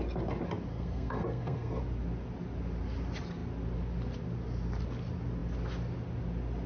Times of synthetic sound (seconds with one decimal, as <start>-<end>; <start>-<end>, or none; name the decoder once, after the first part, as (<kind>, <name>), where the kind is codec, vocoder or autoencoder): 0.7-1.8 (codec, SNAC)